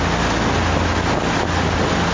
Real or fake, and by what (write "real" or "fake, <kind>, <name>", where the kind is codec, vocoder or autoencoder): real